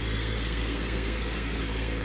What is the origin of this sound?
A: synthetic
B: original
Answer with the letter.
A